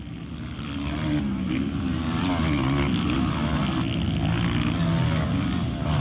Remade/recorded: recorded